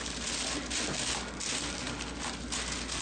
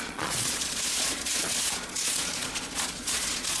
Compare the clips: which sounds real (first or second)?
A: first